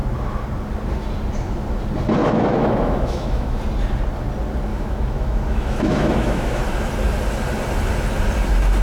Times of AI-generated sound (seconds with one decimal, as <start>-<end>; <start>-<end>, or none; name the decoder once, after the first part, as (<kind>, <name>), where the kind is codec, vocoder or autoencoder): 2.2-3.6 (autoencoder, DAC-VAE); 4.7-6.6

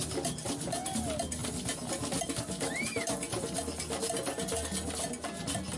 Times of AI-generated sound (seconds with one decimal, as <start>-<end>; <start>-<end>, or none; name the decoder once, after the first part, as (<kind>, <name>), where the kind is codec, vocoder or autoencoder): none

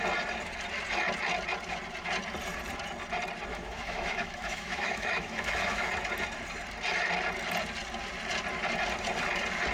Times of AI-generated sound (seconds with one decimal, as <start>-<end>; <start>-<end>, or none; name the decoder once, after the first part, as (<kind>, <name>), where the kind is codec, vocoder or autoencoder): 3.5-5.9 (autoencoder, DAC-VAE)

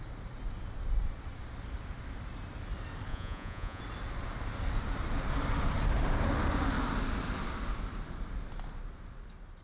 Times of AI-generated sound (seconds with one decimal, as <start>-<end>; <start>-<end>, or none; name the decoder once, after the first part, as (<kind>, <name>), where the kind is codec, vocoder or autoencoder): 3.1-3.8 (vocoder, Vocos)

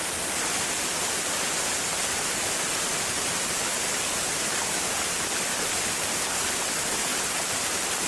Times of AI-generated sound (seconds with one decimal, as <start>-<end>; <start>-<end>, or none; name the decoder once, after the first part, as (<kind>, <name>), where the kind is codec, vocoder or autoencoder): 7.1-8.1 (vocoder, BigVGAN v2)